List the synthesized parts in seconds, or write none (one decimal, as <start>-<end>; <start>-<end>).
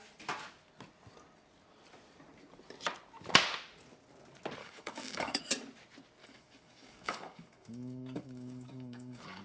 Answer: 4.6-5.4; 6.2-9.4